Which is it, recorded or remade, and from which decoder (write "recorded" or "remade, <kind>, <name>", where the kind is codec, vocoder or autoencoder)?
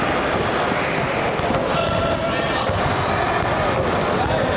recorded